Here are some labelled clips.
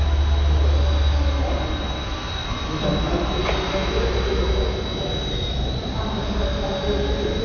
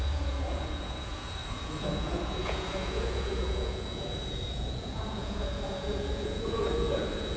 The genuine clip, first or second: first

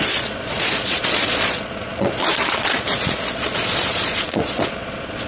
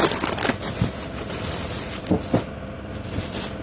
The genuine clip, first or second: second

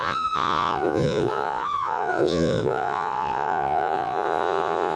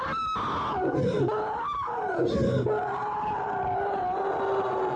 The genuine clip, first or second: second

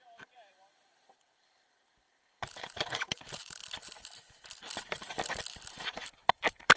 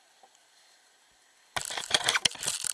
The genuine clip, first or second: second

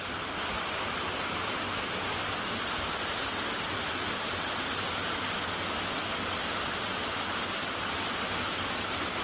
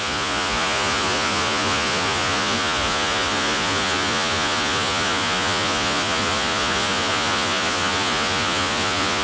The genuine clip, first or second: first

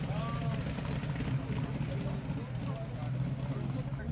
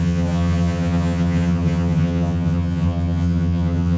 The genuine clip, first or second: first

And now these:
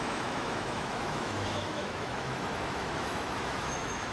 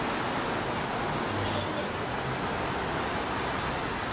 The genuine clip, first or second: second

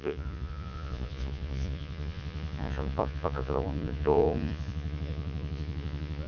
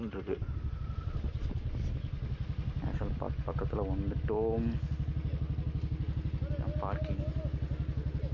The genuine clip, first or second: second